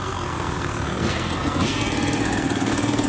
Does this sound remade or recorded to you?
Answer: remade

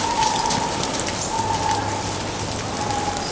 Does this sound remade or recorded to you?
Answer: recorded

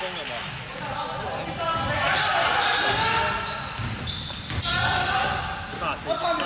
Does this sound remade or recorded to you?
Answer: recorded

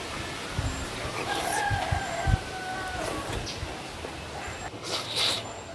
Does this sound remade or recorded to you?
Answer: recorded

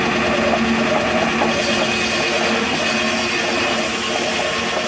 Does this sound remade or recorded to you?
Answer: recorded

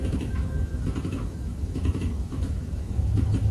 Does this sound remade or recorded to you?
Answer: remade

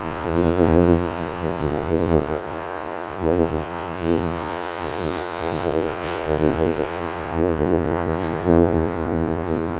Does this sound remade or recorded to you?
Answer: remade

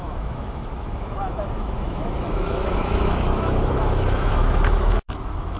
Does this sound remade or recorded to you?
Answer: remade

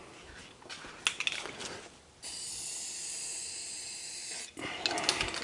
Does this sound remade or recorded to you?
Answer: recorded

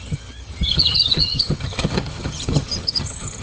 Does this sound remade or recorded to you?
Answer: remade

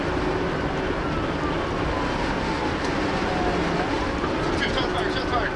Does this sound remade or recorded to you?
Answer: recorded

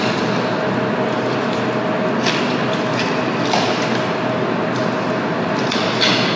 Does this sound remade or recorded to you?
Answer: recorded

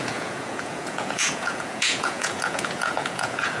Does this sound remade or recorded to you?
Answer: remade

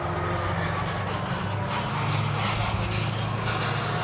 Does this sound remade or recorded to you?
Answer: recorded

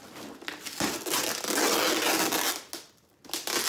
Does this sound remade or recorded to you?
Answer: recorded